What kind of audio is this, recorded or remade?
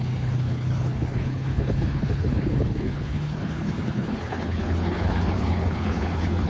remade